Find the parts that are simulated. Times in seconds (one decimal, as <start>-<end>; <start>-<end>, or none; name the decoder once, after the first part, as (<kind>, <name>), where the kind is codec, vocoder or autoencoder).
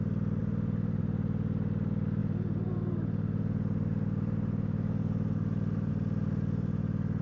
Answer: 0.4-1.0 (vocoder, BigVGAN v2); 2.2-5.9